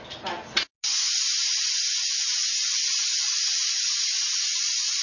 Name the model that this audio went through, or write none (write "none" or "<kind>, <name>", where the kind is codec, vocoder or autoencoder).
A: none